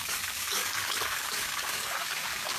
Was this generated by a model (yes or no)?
yes